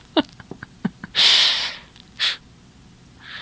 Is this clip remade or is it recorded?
recorded